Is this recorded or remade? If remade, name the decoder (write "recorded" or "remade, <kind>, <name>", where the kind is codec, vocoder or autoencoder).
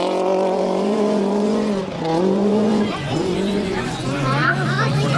remade, vocoder, Vocos